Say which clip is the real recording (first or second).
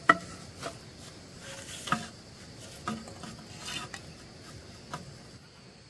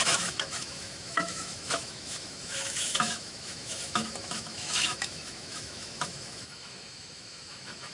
first